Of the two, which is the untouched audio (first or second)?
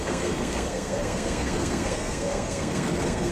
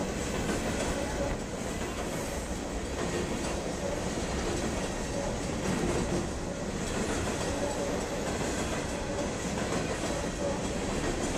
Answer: second